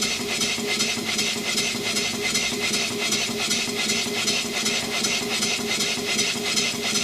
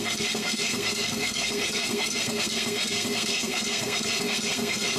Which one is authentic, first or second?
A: first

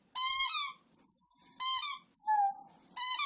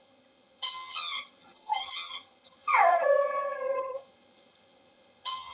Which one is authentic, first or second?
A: first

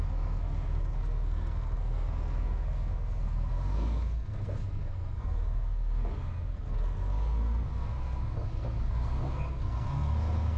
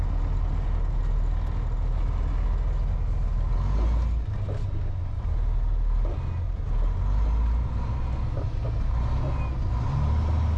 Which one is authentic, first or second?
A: second